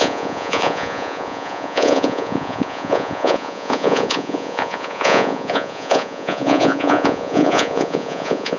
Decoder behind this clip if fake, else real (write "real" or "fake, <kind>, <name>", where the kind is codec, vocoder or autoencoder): fake, vocoder, Vocos